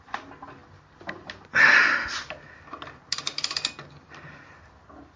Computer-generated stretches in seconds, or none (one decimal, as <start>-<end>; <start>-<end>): none